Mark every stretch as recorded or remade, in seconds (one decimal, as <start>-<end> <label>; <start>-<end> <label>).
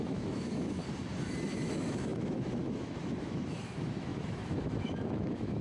0.0-0.8 remade; 0.8-1.4 recorded; 1.4-5.6 remade